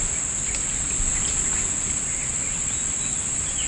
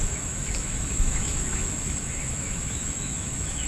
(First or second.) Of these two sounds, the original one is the first